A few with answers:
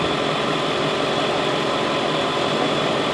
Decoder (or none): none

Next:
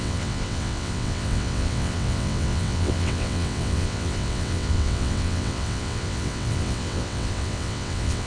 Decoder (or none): vocoder, WaveNeXt